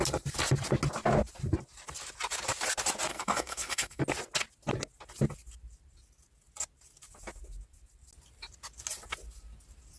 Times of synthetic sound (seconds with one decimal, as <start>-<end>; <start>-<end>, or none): 3.1-4.0